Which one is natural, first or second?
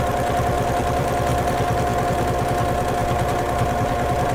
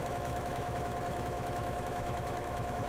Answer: first